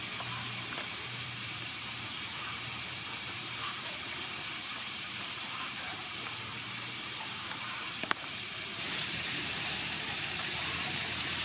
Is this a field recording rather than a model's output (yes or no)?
no